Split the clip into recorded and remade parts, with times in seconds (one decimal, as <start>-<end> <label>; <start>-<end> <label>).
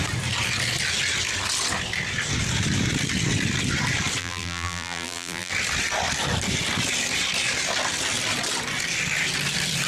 0.0-4.2 recorded; 4.2-5.5 remade; 5.5-9.9 recorded